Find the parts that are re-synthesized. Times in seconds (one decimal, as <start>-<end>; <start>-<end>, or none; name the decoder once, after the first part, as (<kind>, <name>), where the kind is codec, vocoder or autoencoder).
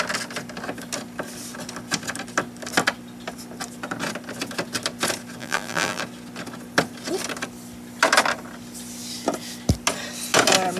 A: 5.4-6.0 (vocoder, BigVGAN v2)